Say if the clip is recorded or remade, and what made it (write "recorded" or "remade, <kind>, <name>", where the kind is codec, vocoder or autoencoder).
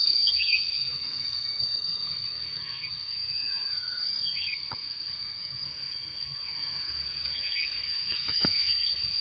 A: remade, codec, SNAC